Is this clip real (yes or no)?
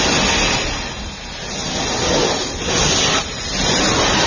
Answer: yes